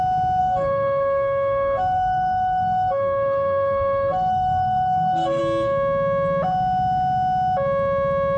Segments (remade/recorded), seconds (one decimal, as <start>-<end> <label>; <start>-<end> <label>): 0.0-0.4 recorded; 0.4-5.4 remade; 5.4-8.4 recorded